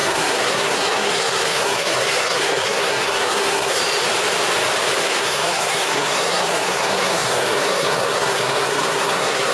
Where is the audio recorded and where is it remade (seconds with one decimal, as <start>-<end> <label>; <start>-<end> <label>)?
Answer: 0.0-3.8 remade; 3.8-5.0 recorded; 5.0-9.5 remade